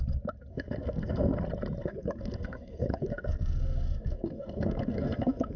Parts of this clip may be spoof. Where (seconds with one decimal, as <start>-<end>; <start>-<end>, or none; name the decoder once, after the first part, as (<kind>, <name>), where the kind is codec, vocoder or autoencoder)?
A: 0.5-1.4 (codec, SNAC); 1.8-5.6